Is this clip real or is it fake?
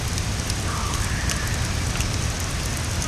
real